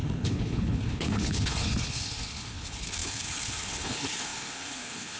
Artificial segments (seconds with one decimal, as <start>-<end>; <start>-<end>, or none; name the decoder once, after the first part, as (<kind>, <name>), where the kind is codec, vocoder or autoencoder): 0.0-5.2 (codec, HILCodec)